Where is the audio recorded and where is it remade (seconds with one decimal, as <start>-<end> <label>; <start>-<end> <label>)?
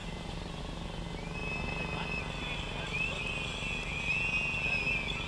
0.0-0.6 remade; 0.6-5.3 recorded